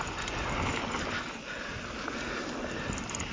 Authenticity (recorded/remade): recorded